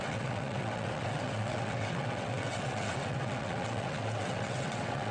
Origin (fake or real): fake